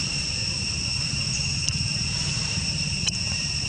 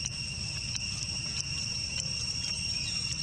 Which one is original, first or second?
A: second